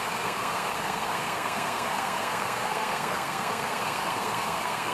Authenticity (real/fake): fake